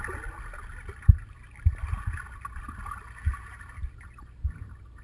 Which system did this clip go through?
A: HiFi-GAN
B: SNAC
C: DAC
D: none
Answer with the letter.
D